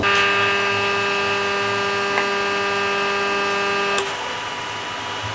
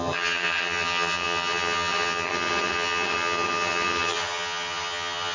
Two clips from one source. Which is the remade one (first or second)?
second